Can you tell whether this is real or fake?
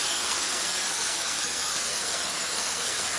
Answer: fake